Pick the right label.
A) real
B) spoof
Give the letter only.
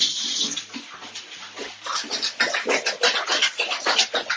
A